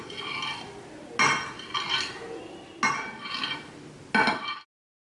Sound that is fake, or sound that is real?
real